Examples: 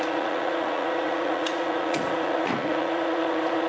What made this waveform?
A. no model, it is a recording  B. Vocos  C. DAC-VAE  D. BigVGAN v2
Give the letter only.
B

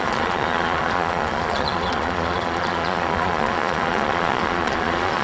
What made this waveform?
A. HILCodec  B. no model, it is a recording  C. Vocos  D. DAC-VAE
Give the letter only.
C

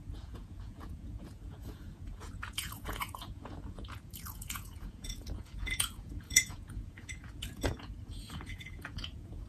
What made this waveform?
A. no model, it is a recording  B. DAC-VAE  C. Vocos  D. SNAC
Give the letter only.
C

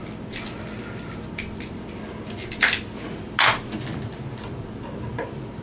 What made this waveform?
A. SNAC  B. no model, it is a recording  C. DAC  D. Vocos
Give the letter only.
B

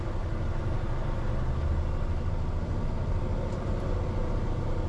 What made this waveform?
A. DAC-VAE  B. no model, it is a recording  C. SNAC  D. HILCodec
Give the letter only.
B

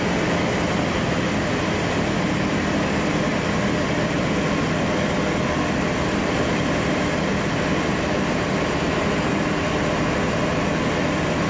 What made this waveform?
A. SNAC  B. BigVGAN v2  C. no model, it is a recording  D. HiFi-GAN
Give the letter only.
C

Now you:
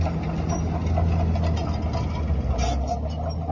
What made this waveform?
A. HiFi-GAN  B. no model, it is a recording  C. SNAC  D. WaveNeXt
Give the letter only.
B